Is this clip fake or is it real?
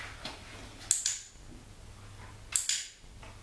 real